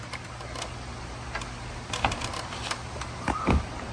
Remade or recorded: recorded